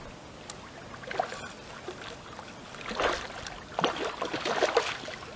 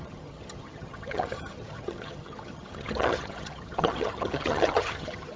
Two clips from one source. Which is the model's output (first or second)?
second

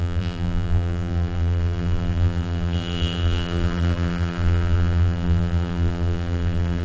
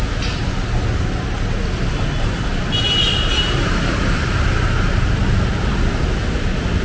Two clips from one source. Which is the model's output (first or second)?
first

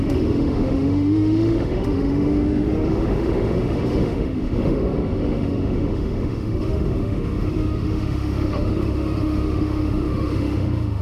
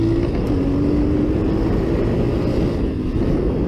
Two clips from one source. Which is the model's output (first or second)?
first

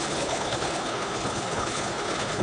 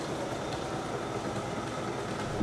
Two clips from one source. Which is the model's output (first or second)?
first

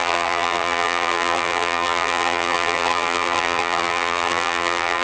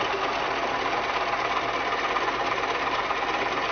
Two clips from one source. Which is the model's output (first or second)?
first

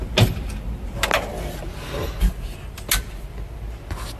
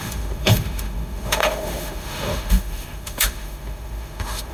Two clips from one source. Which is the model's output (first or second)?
second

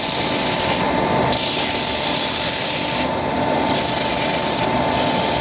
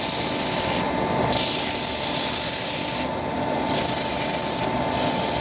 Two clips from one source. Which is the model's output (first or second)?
first